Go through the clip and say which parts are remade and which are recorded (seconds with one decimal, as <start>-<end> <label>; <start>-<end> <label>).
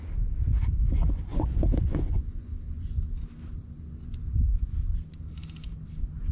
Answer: 0.0-1.3 recorded; 1.3-3.0 remade; 3.0-3.6 recorded; 3.6-4.1 remade; 4.1-6.3 recorded